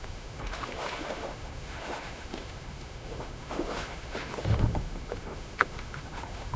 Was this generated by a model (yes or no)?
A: yes